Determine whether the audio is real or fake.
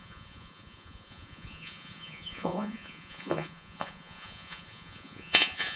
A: fake